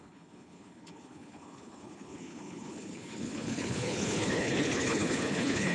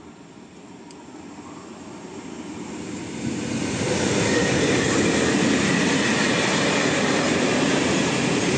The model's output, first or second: first